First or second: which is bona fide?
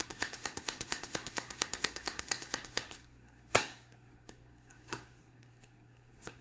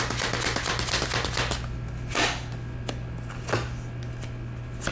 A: second